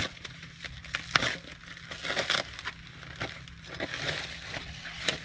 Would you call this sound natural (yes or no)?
yes